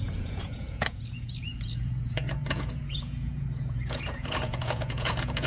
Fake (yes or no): yes